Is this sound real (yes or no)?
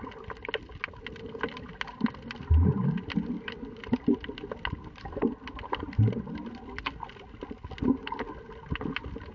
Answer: yes